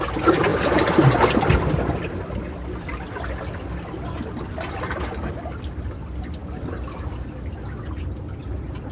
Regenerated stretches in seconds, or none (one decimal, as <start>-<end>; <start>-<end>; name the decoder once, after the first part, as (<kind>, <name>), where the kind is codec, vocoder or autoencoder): none